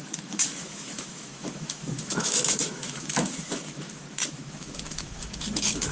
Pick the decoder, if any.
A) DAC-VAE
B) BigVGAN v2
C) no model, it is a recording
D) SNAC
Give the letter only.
A